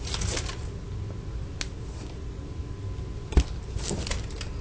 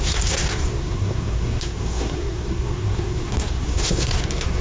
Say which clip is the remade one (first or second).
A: second